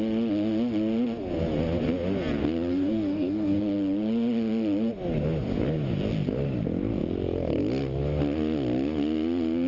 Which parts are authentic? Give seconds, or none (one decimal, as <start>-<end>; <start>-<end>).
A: 0.0-2.7; 3.6-9.7

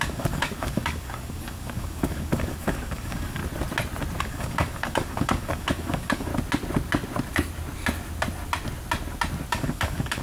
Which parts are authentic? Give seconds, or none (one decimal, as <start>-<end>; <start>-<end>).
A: 3.4-4.2; 6.3-9.5